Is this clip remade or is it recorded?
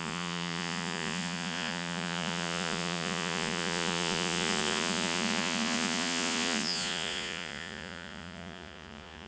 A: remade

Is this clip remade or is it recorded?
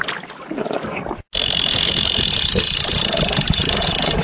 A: recorded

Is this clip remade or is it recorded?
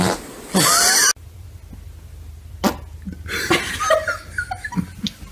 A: recorded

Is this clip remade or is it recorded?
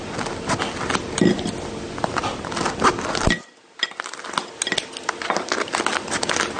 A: recorded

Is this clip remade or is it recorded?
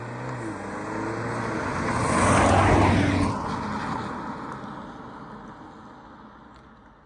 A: recorded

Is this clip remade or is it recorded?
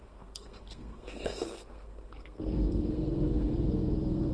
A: remade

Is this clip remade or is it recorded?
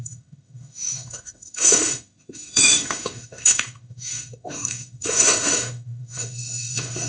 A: remade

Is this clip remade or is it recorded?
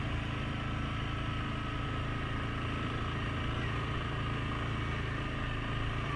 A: recorded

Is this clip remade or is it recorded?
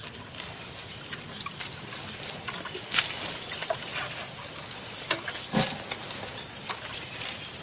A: recorded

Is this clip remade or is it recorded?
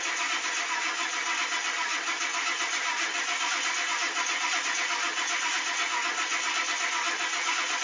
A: recorded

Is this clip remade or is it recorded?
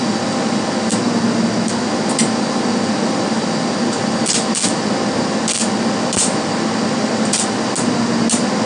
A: recorded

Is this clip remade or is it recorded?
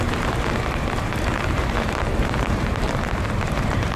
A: remade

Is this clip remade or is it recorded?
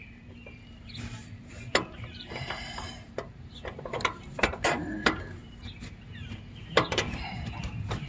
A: remade